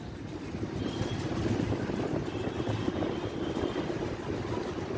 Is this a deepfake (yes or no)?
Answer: no